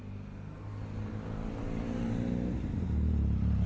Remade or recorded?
recorded